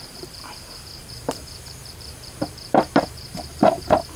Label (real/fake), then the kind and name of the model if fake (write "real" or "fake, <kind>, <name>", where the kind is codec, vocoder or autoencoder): fake, vocoder, BigVGAN v2